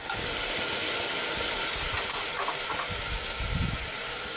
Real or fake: real